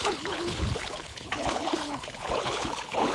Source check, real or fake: fake